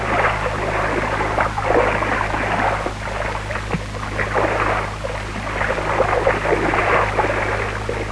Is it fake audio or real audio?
real